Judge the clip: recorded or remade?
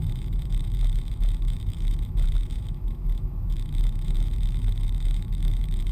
remade